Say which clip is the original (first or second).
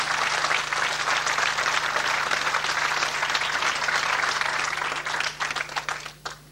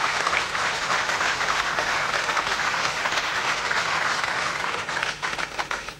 first